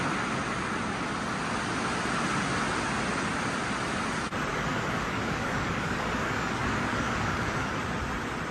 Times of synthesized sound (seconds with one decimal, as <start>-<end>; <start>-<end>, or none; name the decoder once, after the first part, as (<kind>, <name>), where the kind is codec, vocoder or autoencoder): 4.5-7.8 (codec, DAC)